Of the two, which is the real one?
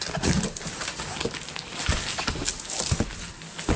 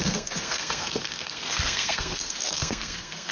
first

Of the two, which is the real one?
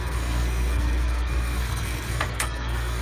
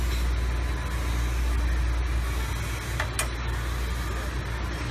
second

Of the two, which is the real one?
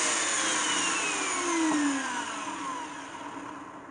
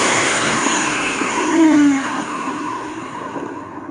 first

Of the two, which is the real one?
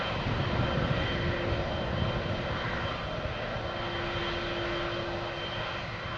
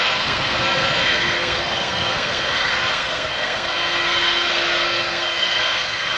first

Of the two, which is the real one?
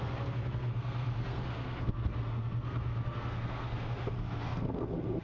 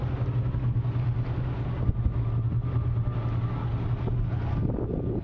second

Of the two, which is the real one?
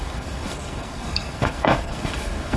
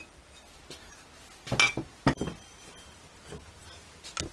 second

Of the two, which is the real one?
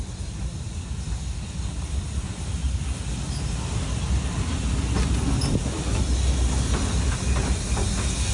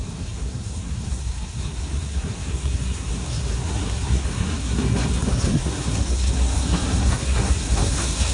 first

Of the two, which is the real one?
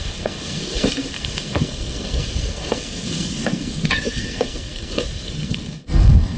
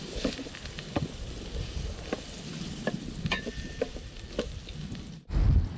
second